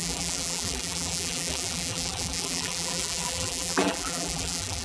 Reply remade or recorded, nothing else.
remade